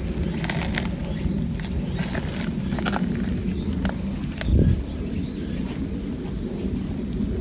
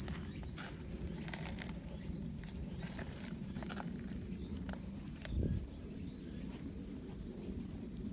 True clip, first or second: first